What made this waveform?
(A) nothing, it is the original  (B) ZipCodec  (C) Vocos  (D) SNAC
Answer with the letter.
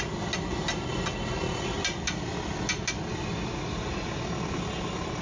A